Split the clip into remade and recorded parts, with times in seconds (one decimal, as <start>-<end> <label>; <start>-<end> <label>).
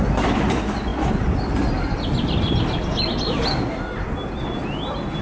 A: 0.0-5.2 recorded